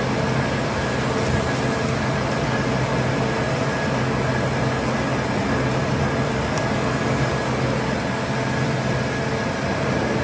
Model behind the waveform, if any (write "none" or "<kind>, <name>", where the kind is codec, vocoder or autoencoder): none